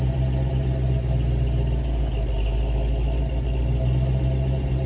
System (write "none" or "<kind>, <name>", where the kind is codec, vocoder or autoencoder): none